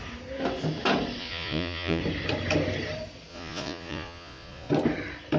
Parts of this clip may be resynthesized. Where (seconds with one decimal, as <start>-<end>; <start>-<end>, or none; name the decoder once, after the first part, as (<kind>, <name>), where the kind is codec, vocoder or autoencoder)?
1.2-2.0 (vocoder, Vocos); 3.3-4.7